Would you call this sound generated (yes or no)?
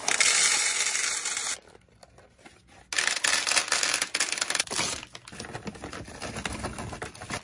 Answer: no